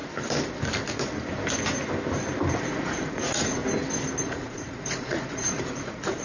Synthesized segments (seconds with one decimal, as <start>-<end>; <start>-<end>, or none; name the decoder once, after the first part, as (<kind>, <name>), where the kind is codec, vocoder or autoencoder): 2.6-3.6 (vocoder, Vocos); 4.2-6.2